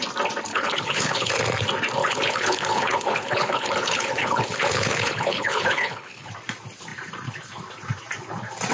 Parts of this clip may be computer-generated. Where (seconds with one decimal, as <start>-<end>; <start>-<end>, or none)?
0.5-1.4; 2.0-6.3